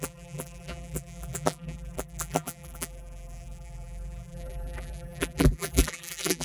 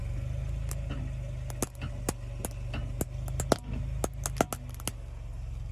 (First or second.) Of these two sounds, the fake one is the first